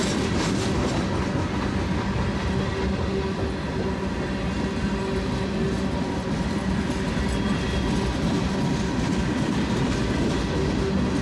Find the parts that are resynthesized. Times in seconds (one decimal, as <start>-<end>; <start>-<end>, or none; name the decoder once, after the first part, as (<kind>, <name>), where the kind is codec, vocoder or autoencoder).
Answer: none